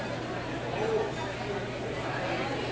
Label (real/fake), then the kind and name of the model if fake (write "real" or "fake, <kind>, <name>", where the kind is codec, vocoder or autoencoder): real